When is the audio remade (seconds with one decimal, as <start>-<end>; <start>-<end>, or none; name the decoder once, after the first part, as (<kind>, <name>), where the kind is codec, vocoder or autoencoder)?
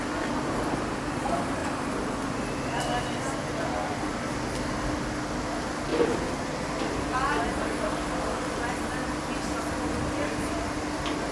none